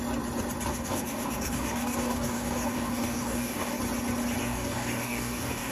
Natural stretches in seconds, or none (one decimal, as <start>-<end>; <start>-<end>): 0.0-0.7; 3.8-4.4